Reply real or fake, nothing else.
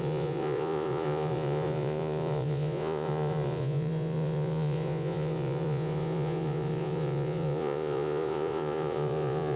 fake